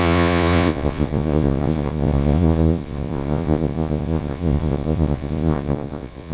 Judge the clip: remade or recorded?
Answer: remade